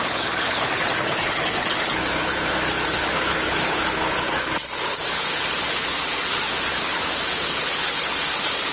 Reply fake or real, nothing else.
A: fake